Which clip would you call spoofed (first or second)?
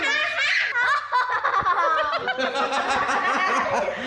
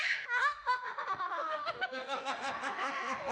second